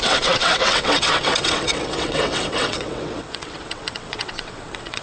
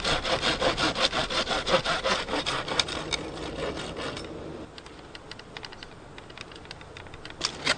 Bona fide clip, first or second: second